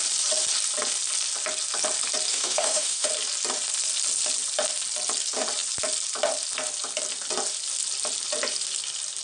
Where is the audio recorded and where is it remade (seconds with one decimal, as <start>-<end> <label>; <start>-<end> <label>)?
0.0-2.3 recorded; 2.3-3.1 remade; 3.1-9.2 recorded